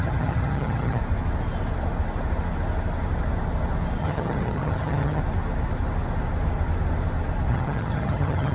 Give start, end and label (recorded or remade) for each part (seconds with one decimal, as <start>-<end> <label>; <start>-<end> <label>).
0.0-1.0 remade; 1.0-4.0 recorded; 4.0-5.2 remade; 5.2-7.5 recorded; 7.5-8.5 remade